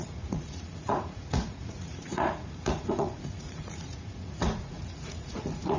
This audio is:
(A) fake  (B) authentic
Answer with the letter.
A